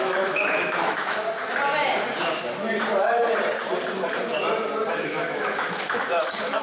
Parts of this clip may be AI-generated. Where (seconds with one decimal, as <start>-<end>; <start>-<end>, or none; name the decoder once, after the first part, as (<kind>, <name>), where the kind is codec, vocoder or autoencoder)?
0.0-1.2 (autoencoder, DAC-VAE); 5.0-6.6